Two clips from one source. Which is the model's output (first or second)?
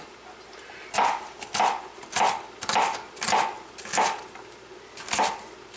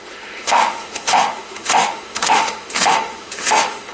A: second